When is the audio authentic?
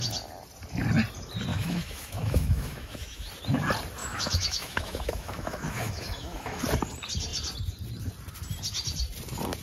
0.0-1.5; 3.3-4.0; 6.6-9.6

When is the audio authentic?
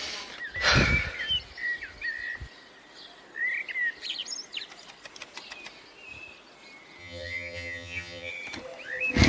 0.0-7.0; 8.3-9.3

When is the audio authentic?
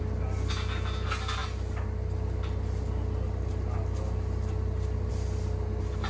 0.0-6.1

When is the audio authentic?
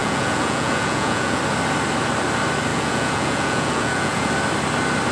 1.4-2.7; 4.3-5.1